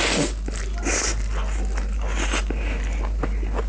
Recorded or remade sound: recorded